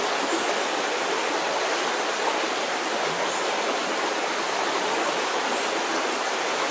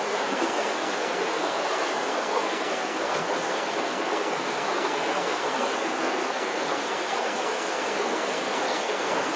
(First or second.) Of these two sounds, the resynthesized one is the second